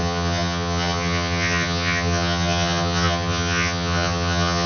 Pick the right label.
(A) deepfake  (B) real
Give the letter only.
A